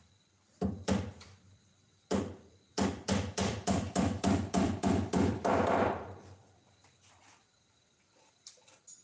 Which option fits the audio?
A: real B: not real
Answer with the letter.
B